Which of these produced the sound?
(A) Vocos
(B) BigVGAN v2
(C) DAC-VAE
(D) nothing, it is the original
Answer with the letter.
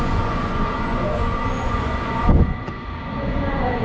A